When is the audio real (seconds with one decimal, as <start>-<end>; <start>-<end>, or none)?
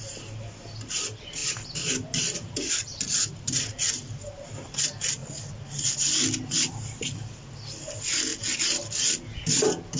0.0-10.0